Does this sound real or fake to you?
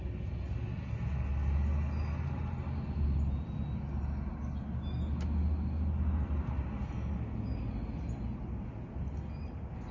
real